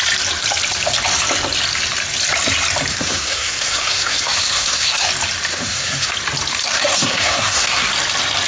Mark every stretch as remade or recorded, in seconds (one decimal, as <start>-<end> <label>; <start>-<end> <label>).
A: 0.0-2.9 recorded; 2.9-5.1 remade; 5.1-5.5 recorded; 5.5-6.1 remade; 6.1-6.6 recorded; 6.6-7.9 remade; 7.9-8.5 recorded